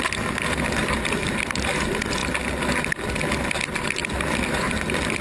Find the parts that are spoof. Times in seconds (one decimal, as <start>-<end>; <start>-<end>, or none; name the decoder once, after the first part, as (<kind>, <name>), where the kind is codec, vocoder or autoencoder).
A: 4.0-5.2 (vocoder, BigVGAN v2)